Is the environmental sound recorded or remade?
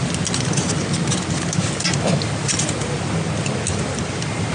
recorded